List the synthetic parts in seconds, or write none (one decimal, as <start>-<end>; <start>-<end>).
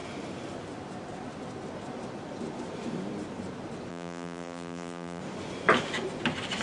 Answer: 3.9-5.2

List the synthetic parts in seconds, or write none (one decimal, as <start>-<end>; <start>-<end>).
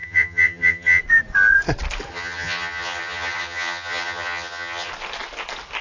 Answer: 0.0-1.0; 2.1-4.9